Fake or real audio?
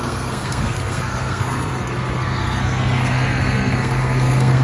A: fake